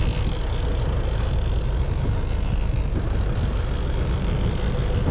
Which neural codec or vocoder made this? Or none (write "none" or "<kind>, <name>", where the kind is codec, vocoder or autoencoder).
none